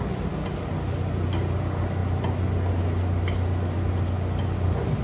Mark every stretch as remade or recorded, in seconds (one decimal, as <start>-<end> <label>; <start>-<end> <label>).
0.0-5.0 recorded